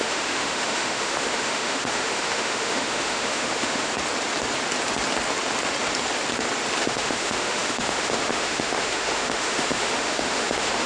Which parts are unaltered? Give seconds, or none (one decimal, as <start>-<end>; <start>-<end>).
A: 3.9-6.8